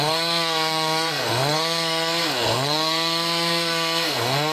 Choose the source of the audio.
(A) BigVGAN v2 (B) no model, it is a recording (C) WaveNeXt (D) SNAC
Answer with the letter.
D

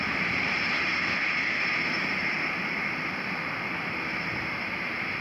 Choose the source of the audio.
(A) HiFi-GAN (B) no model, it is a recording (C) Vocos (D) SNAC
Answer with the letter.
B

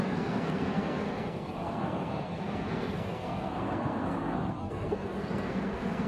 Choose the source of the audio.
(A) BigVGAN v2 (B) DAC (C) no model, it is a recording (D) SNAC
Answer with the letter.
D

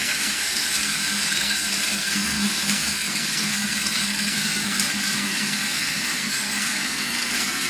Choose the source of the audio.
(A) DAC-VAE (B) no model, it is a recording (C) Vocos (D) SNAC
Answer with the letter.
D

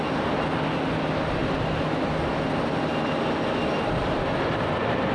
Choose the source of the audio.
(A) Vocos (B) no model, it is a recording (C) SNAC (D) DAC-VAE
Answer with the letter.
B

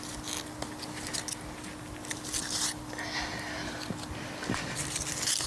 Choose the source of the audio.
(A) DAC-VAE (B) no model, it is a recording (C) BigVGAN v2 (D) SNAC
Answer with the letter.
B